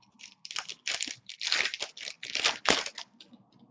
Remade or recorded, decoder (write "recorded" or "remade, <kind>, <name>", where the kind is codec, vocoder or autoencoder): recorded